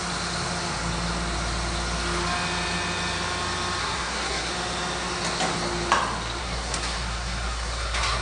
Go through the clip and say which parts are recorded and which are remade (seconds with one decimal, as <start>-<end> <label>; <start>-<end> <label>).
0.0-3.8 recorded; 3.8-4.5 remade; 4.5-6.4 recorded; 6.4-8.2 remade